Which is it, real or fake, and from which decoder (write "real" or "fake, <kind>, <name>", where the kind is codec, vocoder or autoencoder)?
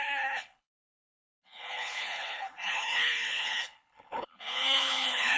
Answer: fake, codec, HILCodec